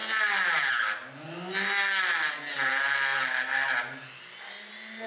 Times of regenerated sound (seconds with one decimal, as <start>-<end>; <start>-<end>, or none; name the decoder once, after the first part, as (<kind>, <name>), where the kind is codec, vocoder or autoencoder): none